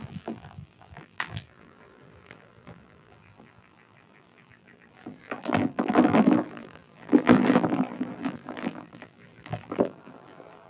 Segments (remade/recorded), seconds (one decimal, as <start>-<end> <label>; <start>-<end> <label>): 0.0-10.7 remade